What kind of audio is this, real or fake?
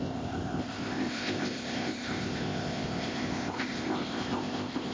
fake